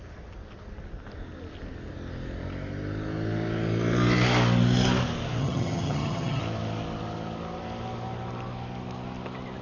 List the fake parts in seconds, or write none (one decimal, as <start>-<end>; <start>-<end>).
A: 5.4-6.4